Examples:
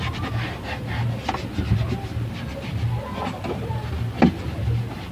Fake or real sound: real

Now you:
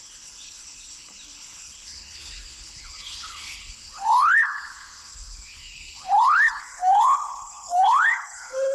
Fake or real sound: fake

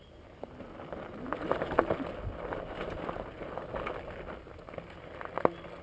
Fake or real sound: real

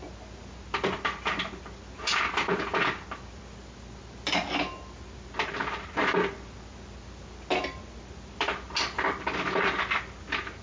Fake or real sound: real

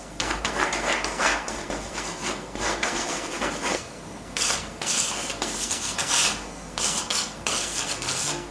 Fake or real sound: fake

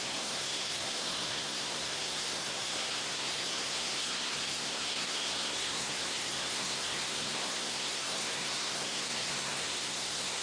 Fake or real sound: fake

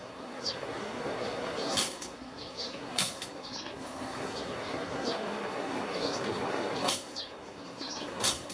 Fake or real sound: fake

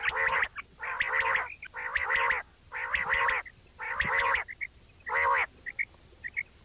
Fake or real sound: real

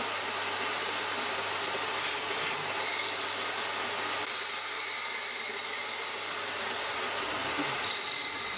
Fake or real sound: real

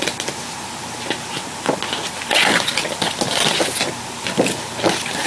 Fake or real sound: real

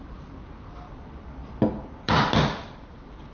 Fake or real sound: fake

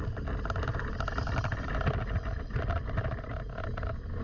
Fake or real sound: real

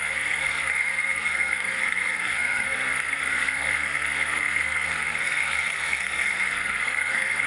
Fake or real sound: fake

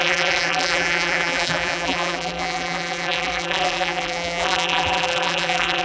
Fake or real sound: fake